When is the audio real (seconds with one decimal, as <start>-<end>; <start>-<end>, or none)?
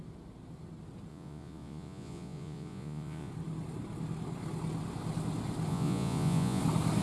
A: 0.0-1.1; 3.3-5.7; 6.6-7.0